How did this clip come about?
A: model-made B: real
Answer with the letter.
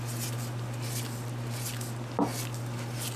B